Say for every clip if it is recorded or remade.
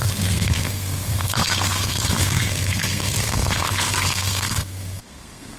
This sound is remade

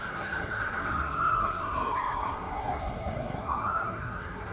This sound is remade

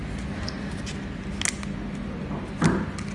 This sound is recorded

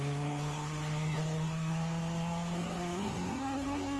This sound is remade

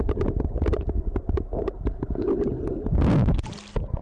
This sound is recorded